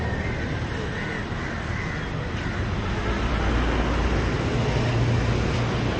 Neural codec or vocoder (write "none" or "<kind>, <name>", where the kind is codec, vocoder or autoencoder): none